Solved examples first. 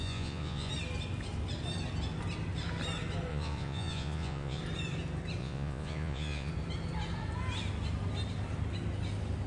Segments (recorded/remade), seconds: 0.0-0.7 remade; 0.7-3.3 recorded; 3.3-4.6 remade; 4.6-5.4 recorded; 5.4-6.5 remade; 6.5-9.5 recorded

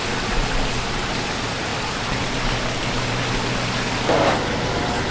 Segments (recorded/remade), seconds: 0.0-5.1 recorded

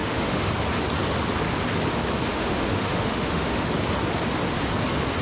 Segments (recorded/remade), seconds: 0.0-0.5 remade; 0.5-2.3 recorded; 2.3-3.7 remade; 3.7-5.2 recorded

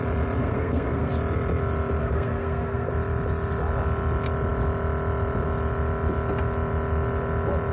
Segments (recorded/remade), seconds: 0.0-0.4 recorded; 0.4-1.1 remade; 1.1-2.0 recorded; 2.0-2.9 remade; 2.9-7.7 recorded

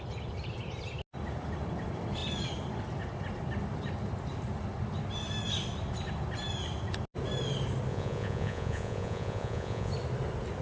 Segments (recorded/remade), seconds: 0.0-7.9 recorded; 7.9-9.9 remade; 9.9-10.6 recorded

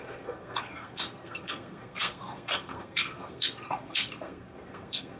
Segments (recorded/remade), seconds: 0.0-5.2 remade